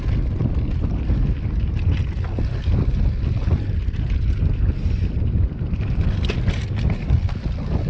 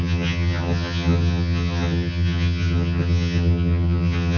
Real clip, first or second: first